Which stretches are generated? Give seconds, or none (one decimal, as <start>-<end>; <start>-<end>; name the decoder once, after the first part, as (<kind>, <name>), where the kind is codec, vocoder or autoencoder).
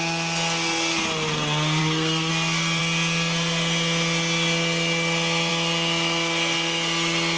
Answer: 1.8-2.3 (codec, SNAC)